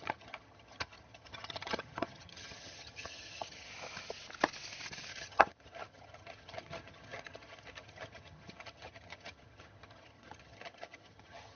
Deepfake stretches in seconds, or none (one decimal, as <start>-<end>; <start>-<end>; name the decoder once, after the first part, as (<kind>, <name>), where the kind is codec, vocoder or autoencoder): 0.0-3.7 (vocoder, HiFi-GAN); 5.1-11.6